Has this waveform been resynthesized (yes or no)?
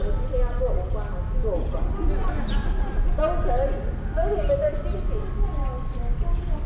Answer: no